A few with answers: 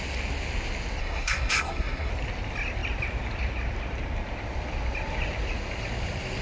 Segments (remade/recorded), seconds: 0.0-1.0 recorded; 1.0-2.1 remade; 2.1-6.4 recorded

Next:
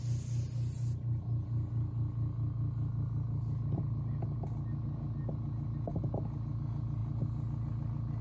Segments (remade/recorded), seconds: 0.0-8.2 recorded